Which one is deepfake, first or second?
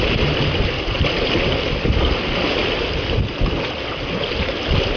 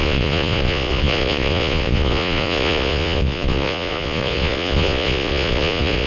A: second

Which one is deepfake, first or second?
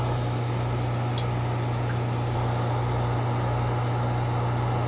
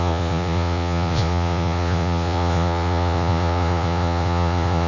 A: second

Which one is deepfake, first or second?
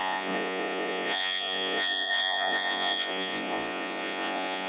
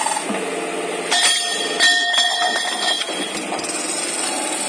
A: first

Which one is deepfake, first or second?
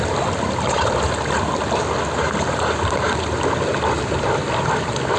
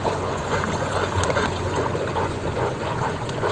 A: second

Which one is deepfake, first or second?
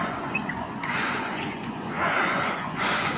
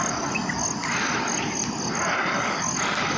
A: first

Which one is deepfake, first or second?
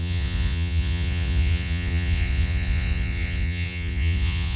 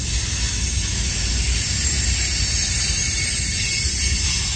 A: first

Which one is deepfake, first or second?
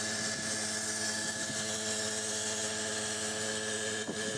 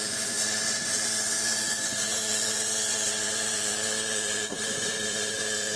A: second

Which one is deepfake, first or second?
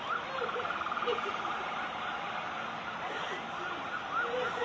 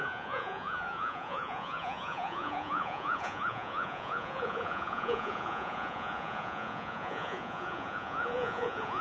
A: second